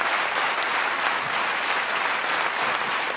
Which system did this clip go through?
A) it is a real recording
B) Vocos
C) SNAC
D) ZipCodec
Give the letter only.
A